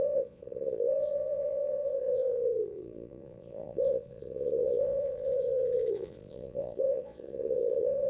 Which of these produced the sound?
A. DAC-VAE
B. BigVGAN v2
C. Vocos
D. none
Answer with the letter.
C